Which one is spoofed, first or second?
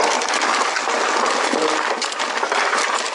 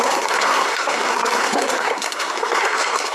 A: second